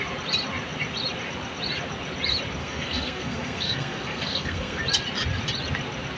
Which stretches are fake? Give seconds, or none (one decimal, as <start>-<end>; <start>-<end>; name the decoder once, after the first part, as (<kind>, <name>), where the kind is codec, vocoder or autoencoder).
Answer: 2.6-4.8 (codec, SNAC)